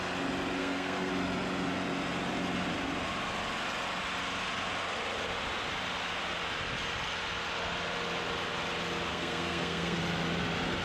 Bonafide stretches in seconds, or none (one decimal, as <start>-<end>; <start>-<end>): 0.0-0.6; 1.1-9.1; 10.0-10.8